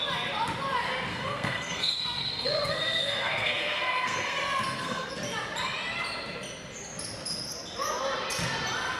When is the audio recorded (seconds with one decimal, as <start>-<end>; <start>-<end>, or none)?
0.0-1.1; 5.1-9.0